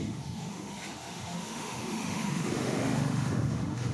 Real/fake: fake